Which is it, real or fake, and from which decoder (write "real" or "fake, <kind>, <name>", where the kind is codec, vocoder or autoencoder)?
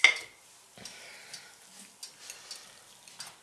real